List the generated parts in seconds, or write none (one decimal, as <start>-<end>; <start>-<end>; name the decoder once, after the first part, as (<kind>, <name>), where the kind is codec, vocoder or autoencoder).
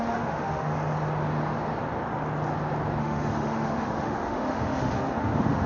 0.0-0.7 (autoencoder, DAC-VAE); 3.0-5.7